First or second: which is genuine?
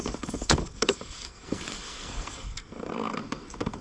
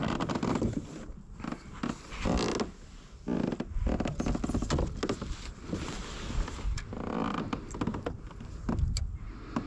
second